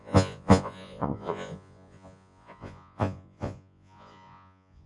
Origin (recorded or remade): remade